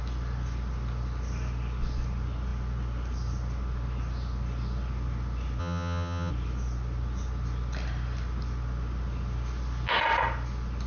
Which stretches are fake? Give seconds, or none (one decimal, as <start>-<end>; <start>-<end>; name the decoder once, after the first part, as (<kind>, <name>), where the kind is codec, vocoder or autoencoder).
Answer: 5.6-6.3 (vocoder, HiFi-GAN)